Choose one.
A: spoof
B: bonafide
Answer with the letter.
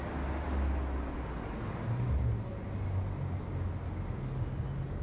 B